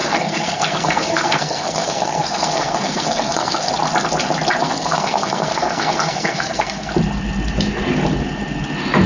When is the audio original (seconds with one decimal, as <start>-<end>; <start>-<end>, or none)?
3.7-4.6; 6.9-9.1